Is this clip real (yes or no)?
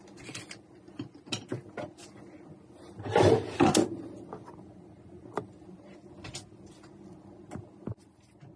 yes